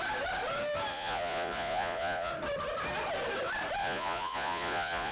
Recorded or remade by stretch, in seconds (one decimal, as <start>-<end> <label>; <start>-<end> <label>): 0.0-0.9 recorded; 0.9-2.3 remade; 2.3-3.8 recorded; 3.8-5.1 remade